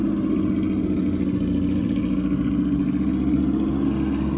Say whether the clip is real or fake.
real